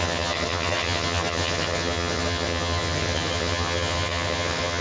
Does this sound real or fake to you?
fake